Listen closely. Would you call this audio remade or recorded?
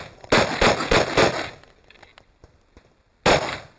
recorded